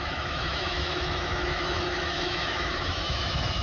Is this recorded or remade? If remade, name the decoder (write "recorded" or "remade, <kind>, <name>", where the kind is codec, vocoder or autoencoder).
remade, autoencoder, DAC-VAE